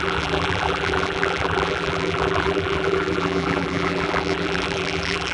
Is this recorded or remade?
remade